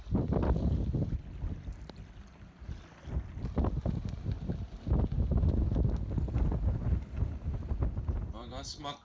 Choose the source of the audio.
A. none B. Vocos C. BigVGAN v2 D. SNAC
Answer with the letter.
A